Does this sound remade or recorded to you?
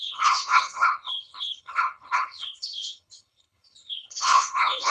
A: remade